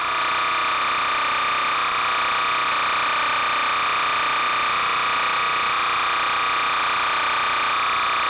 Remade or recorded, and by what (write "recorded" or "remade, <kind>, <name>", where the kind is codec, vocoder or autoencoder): recorded